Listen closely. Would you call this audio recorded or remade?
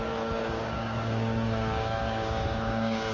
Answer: remade